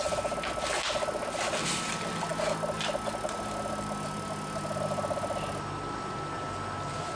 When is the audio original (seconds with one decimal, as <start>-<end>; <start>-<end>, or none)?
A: 0.0-7.2